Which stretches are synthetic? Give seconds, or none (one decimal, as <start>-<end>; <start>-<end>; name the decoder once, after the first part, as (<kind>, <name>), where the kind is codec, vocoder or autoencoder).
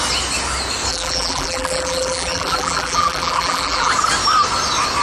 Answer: 0.9-3.9 (vocoder, BigVGAN v2)